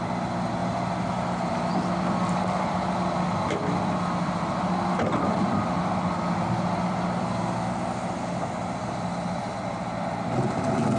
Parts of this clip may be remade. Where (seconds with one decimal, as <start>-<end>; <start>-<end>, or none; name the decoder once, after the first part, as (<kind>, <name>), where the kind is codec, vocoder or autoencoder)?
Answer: none